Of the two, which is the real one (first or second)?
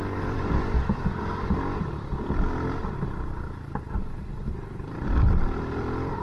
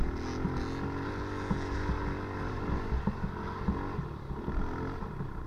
second